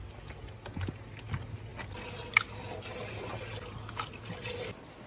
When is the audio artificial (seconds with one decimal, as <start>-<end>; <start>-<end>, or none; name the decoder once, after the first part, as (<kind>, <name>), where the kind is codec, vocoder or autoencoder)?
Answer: none